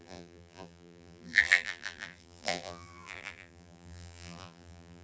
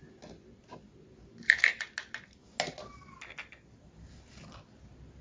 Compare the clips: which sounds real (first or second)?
second